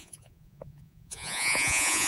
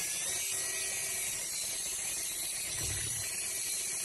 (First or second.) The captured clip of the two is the second